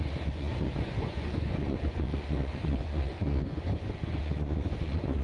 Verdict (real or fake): fake